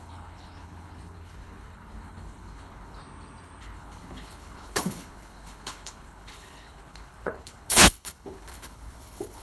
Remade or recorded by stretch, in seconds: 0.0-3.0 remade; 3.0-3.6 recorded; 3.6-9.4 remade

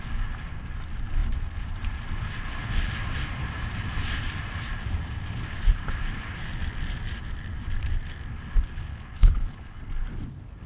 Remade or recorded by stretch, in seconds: 0.0-8.9 recorded; 8.9-9.8 remade; 9.8-10.7 recorded

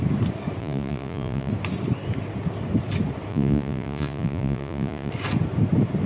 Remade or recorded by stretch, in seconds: 0.0-0.6 recorded; 0.6-1.5 remade; 1.5-3.3 recorded; 3.3-5.1 remade; 5.1-6.1 recorded

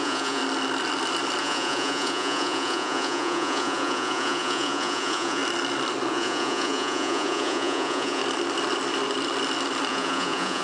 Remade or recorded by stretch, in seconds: 0.0-0.4 remade; 0.4-1.4 recorded; 1.4-5.4 remade; 5.4-6.1 recorded; 6.1-8.2 remade; 8.2-9.9 recorded; 9.9-10.6 remade

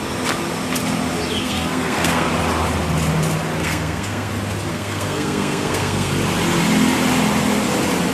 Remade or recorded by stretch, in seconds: 0.0-1.4 recorded; 1.4-2.3 remade; 2.3-3.6 recorded; 3.6-4.3 remade; 4.3-4.7 recorded; 4.7-6.1 remade; 6.1-8.1 recorded

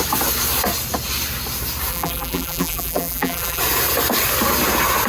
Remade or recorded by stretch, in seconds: 0.0-1.9 recorded; 1.9-3.6 remade; 3.6-5.1 recorded

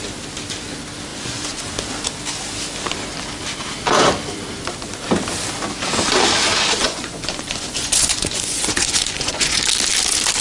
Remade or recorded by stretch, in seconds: 0.0-1.1 recorded; 1.1-1.6 remade; 1.6-6.8 recorded; 6.8-9.6 remade; 9.6-10.4 recorded